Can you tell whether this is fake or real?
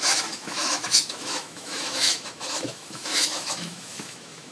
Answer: fake